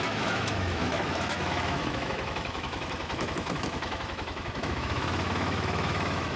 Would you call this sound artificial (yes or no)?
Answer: yes